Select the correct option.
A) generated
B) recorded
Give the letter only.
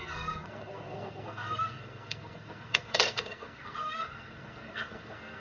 A